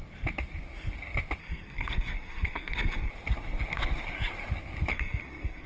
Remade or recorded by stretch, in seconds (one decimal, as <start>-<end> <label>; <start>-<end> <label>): 0.0-1.4 recorded; 1.4-3.1 remade; 3.1-4.9 recorded; 4.9-5.7 remade